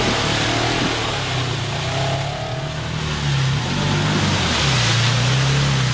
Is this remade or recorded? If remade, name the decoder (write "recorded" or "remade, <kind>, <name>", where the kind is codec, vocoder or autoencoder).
recorded